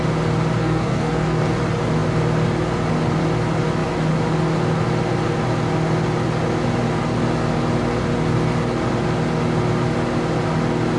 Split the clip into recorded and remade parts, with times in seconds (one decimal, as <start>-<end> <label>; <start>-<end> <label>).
0.0-0.6 recorded; 0.6-1.4 remade; 1.4-11.0 recorded